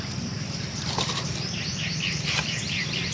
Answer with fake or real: real